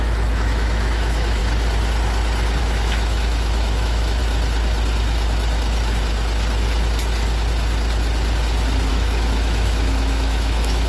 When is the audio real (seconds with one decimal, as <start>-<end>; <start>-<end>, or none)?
1.4-2.6; 4.2-8.9